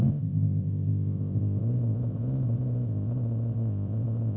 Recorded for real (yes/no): no